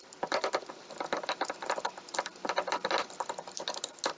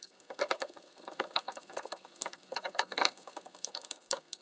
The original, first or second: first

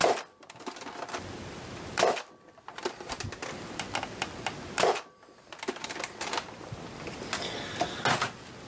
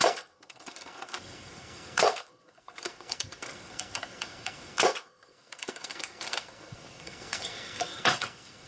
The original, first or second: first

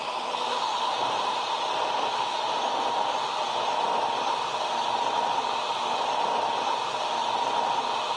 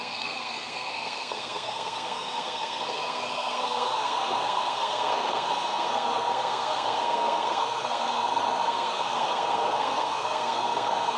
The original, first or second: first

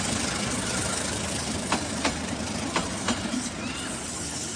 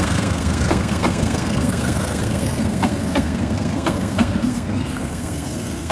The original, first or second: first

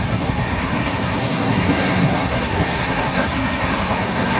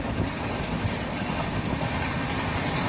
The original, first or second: second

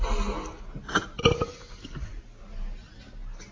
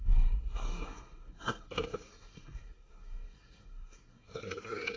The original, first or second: first